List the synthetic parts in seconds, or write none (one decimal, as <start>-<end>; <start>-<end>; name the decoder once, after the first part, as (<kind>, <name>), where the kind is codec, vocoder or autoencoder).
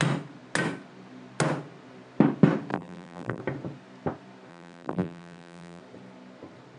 2.7-3.4 (vocoder, BigVGAN v2); 4.5-5.8